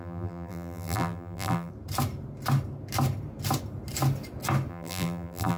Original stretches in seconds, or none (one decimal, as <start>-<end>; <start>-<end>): 1.7-4.7